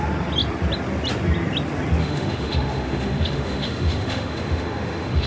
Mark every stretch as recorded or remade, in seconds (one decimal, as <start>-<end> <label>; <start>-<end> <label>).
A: 0.0-2.0 recorded; 2.0-5.3 remade